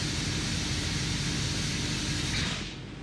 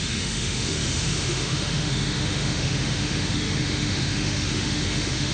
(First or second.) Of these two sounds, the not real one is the second